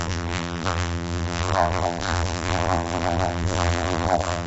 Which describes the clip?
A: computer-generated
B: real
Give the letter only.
A